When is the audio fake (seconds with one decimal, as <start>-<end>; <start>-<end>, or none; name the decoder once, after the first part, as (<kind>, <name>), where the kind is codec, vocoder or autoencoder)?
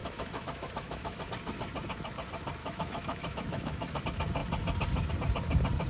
0.0-1.3 (autoencoder, DAC-VAE); 2.6-4.0